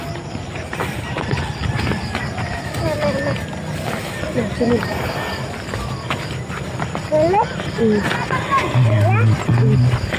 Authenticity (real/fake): real